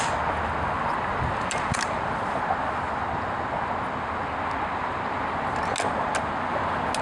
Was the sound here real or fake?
real